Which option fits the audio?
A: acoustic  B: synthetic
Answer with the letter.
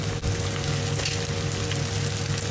A